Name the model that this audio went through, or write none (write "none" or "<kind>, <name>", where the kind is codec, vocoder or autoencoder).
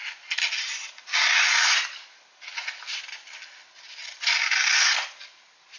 none